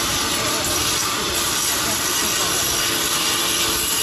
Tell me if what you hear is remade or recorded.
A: recorded